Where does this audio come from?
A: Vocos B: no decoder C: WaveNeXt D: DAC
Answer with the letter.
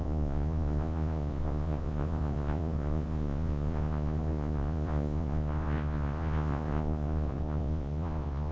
A